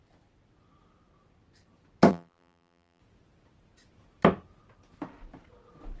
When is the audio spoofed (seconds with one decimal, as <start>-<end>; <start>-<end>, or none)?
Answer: 2.1-3.0